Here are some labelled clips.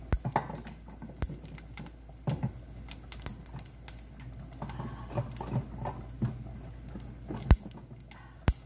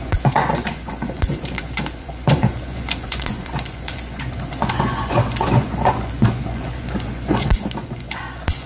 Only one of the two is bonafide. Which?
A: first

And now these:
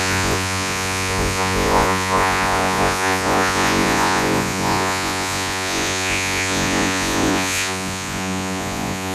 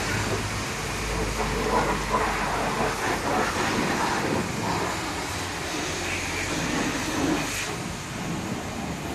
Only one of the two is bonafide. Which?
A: second